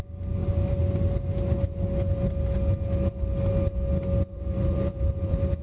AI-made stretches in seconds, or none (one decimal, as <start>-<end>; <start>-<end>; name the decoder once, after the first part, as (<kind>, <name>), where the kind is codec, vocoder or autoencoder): 4.3-5.6 (vocoder, BigVGAN v2)